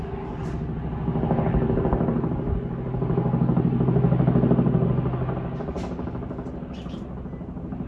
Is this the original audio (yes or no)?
yes